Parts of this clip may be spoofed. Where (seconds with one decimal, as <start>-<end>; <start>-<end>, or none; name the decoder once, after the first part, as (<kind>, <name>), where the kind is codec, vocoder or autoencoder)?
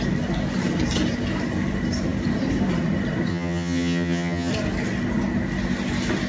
3.3-4.5 (vocoder, HiFi-GAN)